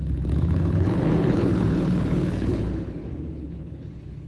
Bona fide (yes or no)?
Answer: no